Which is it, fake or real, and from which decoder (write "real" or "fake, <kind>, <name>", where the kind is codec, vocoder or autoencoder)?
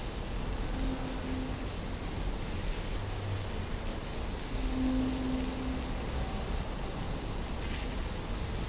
real